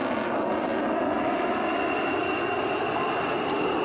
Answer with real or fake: real